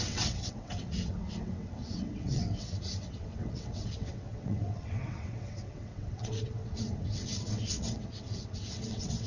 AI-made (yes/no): yes